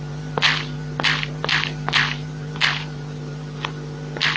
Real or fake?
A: real